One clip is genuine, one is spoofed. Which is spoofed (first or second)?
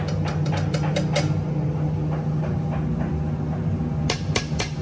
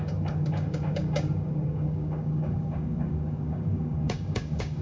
second